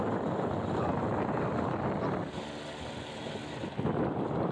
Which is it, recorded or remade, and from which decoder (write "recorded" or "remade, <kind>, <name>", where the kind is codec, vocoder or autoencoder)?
recorded